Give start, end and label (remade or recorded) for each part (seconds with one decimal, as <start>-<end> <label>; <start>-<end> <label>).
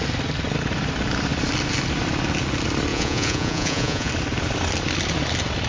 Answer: 0.0-2.9 recorded; 2.9-4.1 remade; 4.1-5.7 recorded